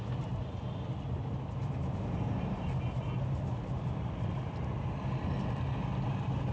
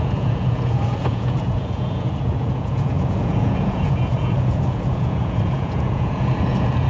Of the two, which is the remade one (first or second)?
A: second